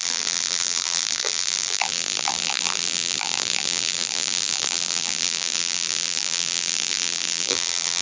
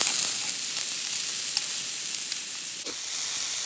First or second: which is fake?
first